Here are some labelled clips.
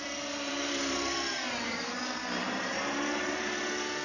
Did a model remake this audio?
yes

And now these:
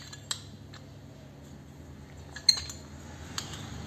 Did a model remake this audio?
no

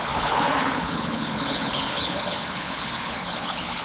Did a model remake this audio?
yes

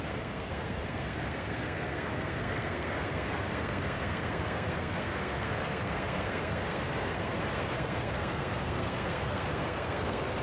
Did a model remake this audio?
yes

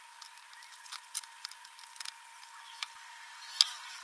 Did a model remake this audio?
no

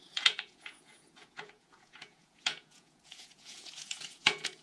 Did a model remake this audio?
yes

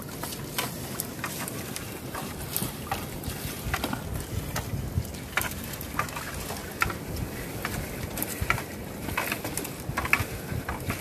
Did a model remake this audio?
no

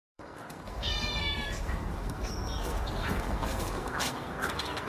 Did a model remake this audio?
yes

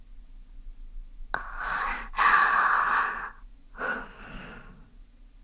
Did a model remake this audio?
no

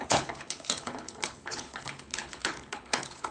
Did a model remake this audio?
yes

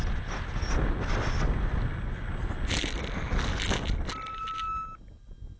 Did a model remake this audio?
no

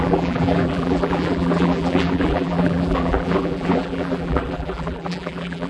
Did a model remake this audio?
yes